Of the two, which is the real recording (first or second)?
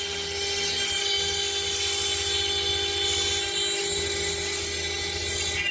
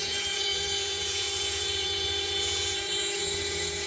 first